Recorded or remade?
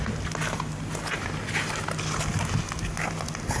recorded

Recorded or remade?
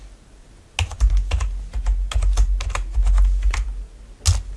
recorded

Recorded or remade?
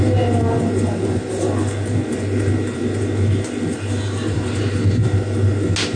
recorded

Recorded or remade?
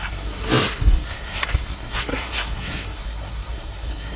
remade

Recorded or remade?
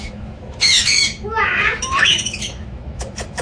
remade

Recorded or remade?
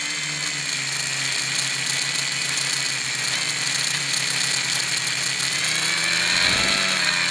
recorded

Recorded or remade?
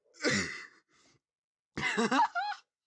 recorded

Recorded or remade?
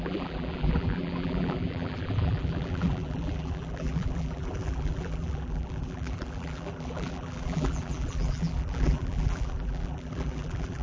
remade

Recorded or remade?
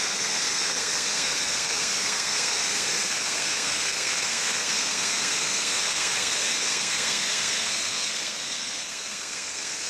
remade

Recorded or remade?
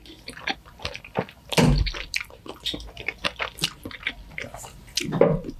recorded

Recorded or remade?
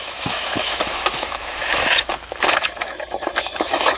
remade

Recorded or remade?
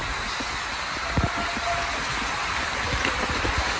recorded